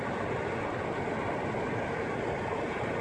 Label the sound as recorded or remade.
recorded